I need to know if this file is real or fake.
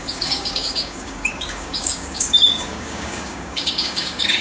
fake